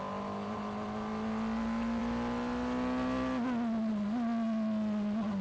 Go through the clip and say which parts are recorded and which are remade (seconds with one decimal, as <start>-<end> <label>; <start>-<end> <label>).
0.0-5.4 recorded